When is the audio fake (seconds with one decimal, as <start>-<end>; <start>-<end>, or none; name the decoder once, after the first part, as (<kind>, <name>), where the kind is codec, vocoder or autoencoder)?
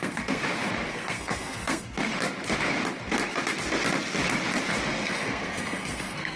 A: 0.0-0.4 (codec, SNAC); 0.9-2.1; 4.9-6.4